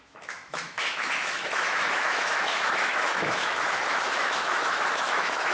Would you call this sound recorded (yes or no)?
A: no